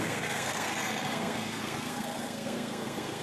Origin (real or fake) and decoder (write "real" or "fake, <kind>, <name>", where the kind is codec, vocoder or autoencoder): fake, codec, SNAC